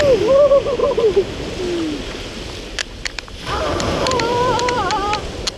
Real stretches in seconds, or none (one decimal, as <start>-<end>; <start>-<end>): 0.0-2.8